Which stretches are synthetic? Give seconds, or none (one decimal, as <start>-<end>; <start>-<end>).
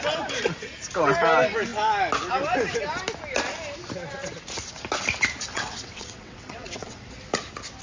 5.5-7.1